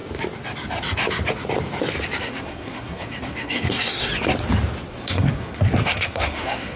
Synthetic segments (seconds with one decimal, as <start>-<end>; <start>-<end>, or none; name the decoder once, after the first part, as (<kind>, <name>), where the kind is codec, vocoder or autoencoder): 2.2-4.1 (codec, SNAC); 4.9-6.8